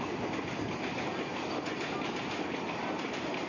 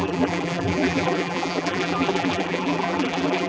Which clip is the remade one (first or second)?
second